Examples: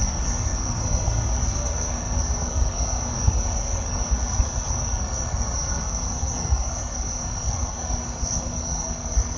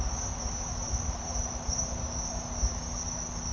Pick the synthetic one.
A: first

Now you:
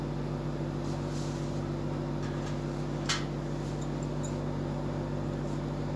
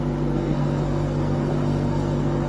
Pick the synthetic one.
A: second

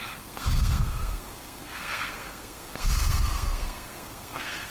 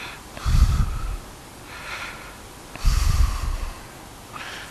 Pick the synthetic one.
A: first